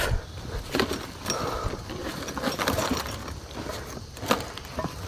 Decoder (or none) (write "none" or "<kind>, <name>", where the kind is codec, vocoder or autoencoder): none